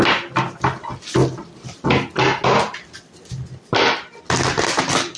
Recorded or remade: recorded